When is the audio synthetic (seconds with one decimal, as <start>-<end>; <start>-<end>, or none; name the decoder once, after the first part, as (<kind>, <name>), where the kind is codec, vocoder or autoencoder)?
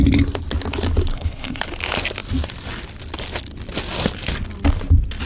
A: 1.1-1.6 (codec, SNAC)